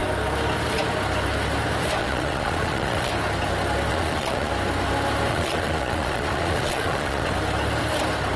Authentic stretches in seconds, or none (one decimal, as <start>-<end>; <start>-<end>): 0.0-2.0; 3.1-3.9; 4.5-5.3; 7.3-8.4